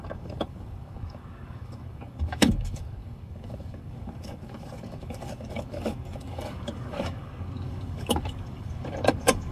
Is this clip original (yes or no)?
no